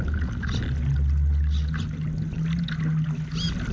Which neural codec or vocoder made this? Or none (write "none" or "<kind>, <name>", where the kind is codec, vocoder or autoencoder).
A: none